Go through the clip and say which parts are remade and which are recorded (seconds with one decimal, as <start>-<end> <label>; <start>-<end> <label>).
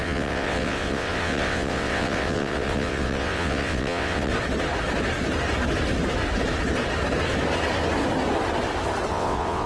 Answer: 0.0-4.3 remade; 4.3-9.1 recorded; 9.1-9.7 remade